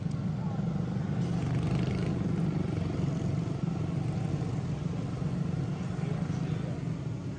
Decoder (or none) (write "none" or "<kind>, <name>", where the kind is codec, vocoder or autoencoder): none